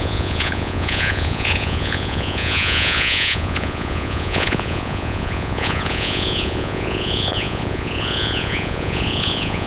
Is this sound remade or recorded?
remade